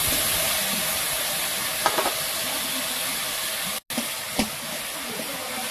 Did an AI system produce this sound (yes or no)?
no